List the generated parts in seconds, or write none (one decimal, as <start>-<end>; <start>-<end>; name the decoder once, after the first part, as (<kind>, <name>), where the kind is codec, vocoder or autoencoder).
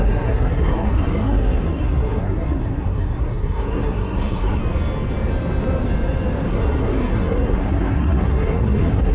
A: 0.0-4.6 (codec, SNAC); 6.5-9.1